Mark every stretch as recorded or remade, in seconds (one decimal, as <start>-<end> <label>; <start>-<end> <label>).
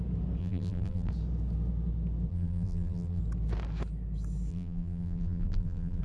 0.0-0.4 recorded; 0.4-1.1 remade; 1.1-2.3 recorded; 2.3-3.2 remade; 3.2-4.5 recorded; 4.5-6.0 remade